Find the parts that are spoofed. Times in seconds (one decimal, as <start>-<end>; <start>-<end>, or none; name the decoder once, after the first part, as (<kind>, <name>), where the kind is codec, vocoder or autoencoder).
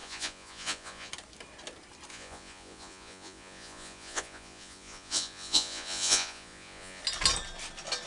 0.0-1.1 (vocoder, Vocos); 2.1-7.0